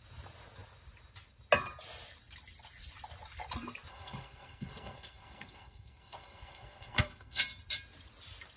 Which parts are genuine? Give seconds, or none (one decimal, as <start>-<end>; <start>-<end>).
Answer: 0.0-3.9; 7.4-8.6